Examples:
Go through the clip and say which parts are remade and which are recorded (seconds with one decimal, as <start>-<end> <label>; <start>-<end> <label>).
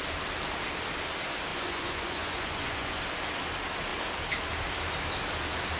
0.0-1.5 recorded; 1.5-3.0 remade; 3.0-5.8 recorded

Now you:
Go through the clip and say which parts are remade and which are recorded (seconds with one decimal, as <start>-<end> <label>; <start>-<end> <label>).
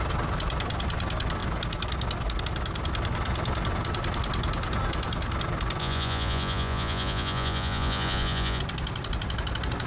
0.0-5.8 recorded; 5.8-8.6 remade; 8.6-9.9 recorded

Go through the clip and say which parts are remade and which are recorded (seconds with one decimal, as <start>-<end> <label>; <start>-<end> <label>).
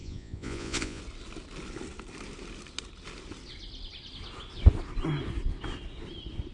0.0-1.0 remade; 1.0-6.5 recorded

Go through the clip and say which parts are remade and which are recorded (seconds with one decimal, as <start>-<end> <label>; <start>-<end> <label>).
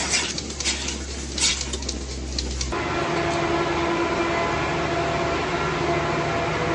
0.0-6.7 recorded